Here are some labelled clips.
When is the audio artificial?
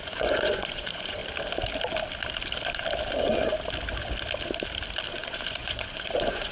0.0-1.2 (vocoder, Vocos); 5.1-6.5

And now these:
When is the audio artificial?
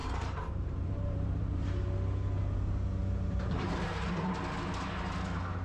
0.0-1.7 (vocoder, BigVGAN v2); 3.0-3.7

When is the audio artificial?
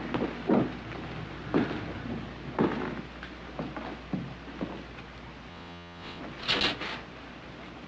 5.5-6.2 (vocoder, WaveNeXt)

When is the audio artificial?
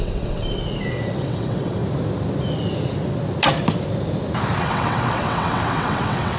0.0-0.6 (vocoder, WaveNeXt); 1.2-1.8; 4.6-6.4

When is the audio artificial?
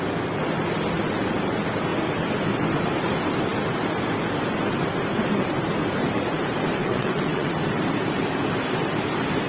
6.8-7.5 (vocoder, WaveNeXt)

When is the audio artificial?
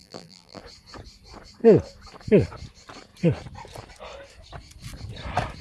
0.0-0.6 (vocoder, BigVGAN v2)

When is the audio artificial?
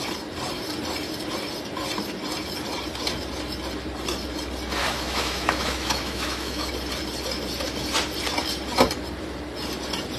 4.8-6.7 (autoencoder, DAC-VAE)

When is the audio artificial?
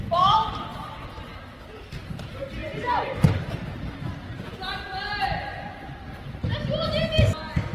none